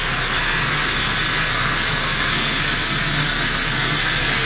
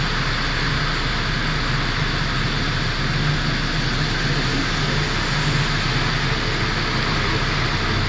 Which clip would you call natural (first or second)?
second